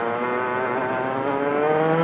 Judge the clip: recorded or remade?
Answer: recorded